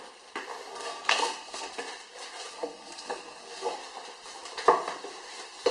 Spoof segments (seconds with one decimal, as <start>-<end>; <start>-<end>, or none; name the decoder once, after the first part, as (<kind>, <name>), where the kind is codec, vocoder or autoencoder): 0.7-1.7 (codec, SNAC); 2.5-3.7